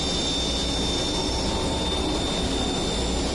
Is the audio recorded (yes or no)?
yes